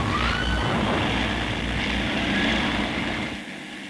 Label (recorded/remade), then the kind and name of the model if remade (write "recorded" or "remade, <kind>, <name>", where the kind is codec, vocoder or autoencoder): recorded